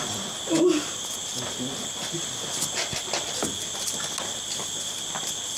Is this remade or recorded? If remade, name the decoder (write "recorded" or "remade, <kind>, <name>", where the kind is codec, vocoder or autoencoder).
recorded